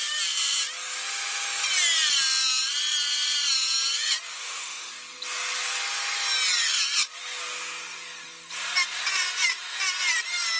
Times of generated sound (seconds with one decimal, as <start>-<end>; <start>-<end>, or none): 4.3-4.9